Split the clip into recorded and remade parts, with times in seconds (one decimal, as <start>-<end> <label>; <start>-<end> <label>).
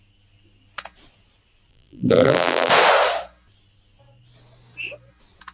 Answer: 0.0-1.7 recorded; 1.7-2.7 remade; 2.7-5.5 recorded